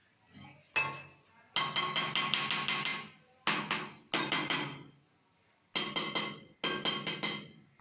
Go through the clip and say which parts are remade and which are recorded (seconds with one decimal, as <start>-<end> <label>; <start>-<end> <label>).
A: 0.0-7.8 recorded